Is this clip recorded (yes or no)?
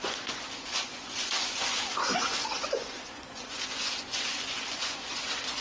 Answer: no